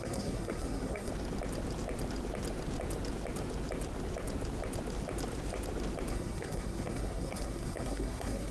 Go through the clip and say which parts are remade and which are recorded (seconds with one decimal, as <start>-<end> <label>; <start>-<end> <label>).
0.0-1.1 remade; 1.1-6.1 recorded; 6.1-8.5 remade